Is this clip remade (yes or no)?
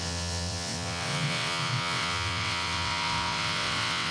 yes